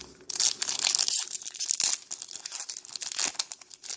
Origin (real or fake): real